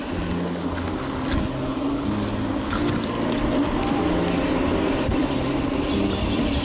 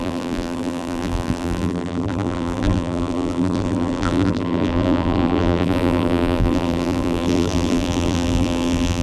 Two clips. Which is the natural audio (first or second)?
first